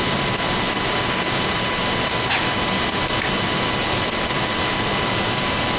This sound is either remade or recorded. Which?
recorded